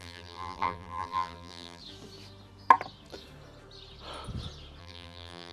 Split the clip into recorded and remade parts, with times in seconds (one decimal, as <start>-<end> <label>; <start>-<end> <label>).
0.0-1.8 remade; 1.8-4.8 recorded; 4.8-5.5 remade